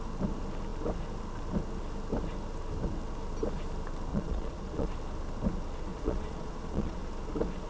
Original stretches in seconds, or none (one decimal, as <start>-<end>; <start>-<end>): 0.0-4.1; 4.9-5.9; 7.0-7.7